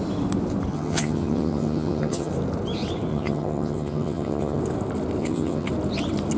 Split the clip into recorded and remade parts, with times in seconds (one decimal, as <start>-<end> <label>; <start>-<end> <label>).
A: 0.0-0.7 recorded; 0.7-2.3 remade; 2.3-3.1 recorded; 3.1-4.6 remade; 4.6-5.2 recorded; 5.2-5.7 remade; 5.7-6.4 recorded